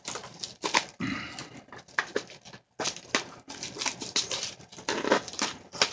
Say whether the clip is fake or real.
real